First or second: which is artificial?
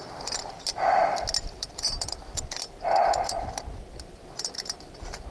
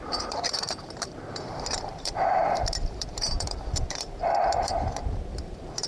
second